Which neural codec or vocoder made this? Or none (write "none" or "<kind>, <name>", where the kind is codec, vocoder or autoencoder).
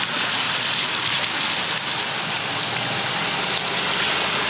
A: none